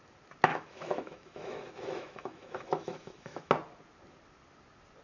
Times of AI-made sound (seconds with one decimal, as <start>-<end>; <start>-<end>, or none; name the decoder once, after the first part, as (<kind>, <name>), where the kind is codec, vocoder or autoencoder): 0.5-3.5 (autoencoder, DAC-VAE)